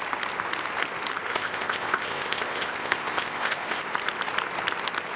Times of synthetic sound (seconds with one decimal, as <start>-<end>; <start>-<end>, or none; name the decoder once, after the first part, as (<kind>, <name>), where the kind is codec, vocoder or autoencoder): 1.3-3.8 (codec, ZipCodec)